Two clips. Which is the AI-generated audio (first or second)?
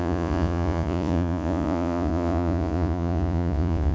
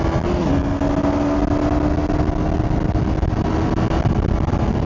first